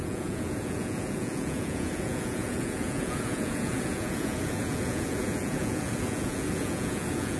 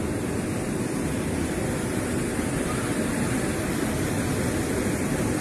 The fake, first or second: first